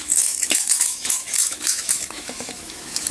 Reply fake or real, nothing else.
fake